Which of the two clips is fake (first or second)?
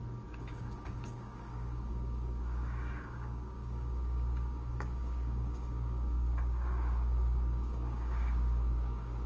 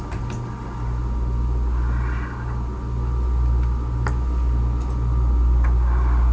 first